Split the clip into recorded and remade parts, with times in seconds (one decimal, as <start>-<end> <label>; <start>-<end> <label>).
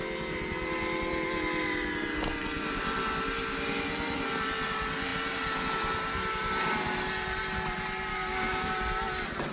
0.0-8.1 recorded; 8.1-8.7 remade; 8.7-9.5 recorded